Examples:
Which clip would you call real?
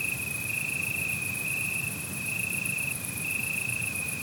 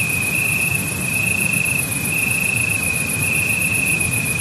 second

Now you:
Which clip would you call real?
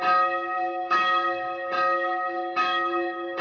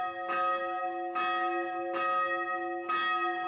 second